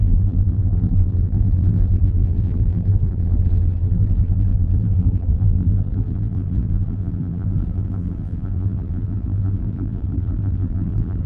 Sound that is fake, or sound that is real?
fake